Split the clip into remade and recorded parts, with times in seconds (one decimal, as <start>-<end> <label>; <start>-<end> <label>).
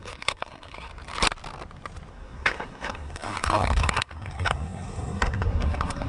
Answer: 0.0-0.9 remade; 0.9-2.1 recorded; 2.1-6.1 remade